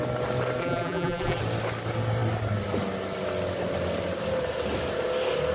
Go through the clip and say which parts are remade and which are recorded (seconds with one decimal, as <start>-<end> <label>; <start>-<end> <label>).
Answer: 0.0-0.6 recorded; 0.6-1.4 remade; 1.4-5.5 recorded